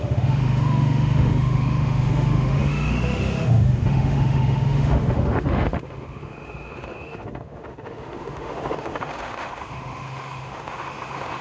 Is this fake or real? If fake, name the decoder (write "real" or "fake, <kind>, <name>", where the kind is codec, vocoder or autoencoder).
fake, autoencoder, DAC-VAE